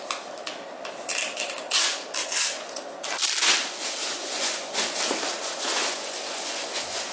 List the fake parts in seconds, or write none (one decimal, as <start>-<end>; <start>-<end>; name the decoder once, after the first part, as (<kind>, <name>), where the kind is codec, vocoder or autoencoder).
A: 2.2-2.8 (vocoder, Vocos); 4.0-5.0; 5.4-7.1